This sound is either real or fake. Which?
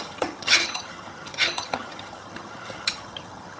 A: fake